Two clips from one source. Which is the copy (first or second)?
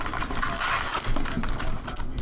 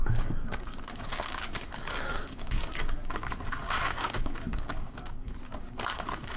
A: second